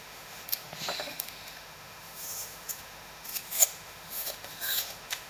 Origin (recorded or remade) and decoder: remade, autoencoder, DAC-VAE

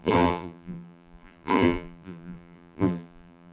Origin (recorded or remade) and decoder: remade, vocoder, BigVGAN v2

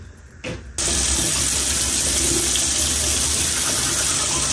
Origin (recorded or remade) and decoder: recorded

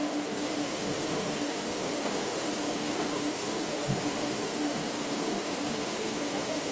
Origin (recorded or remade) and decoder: remade, autoencoder, DAC-VAE